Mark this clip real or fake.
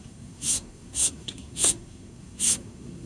fake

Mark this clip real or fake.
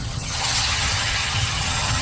fake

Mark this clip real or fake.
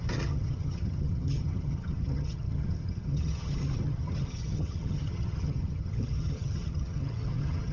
fake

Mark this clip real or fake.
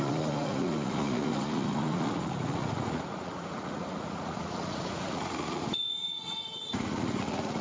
fake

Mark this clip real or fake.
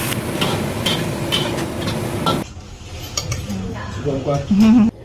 real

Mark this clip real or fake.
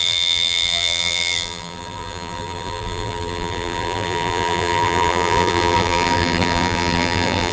fake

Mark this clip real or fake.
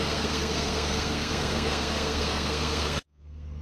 fake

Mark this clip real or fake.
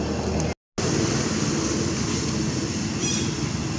real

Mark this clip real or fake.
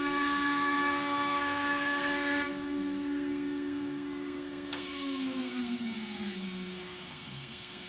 fake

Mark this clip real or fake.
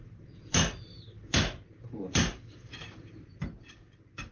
fake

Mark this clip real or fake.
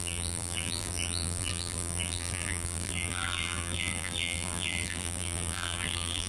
fake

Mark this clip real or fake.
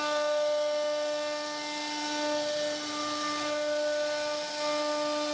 real